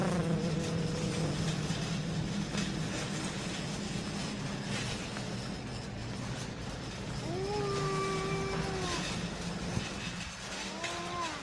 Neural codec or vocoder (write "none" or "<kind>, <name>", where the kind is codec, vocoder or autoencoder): none